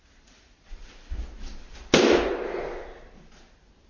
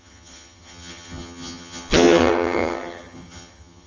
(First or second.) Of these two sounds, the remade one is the second